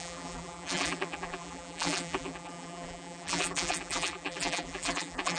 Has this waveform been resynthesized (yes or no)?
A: yes